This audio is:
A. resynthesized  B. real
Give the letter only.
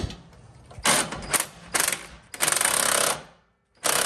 A